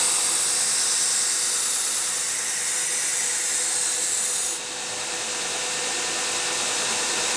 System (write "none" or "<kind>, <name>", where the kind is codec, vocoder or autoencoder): none